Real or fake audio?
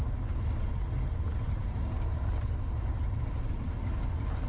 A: real